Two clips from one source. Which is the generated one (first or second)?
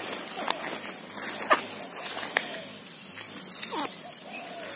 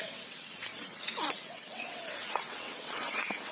second